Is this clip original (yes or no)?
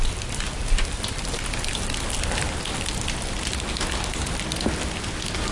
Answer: yes